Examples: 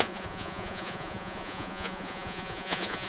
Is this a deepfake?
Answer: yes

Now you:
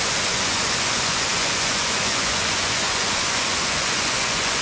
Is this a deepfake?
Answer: yes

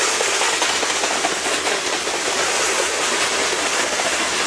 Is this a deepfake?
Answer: no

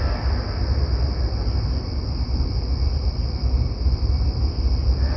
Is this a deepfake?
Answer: no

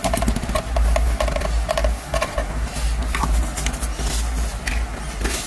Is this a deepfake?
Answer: no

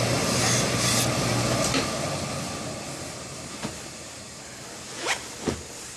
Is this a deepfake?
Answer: no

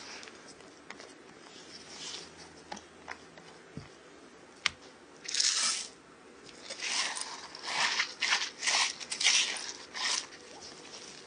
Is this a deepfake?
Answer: no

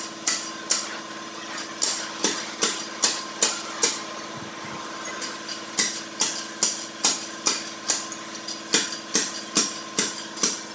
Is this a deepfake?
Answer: no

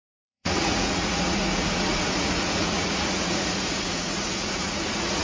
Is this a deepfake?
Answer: yes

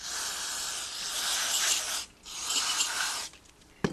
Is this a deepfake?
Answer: no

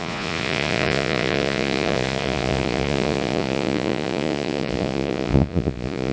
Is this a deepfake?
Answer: yes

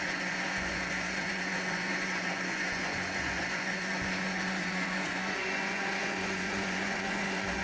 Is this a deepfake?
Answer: yes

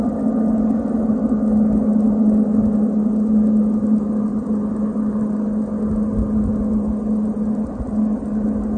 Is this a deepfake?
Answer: no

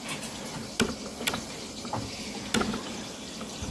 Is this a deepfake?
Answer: no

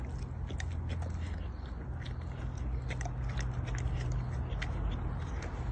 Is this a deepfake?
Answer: no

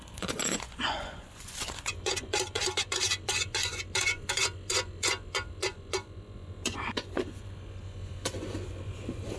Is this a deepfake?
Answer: yes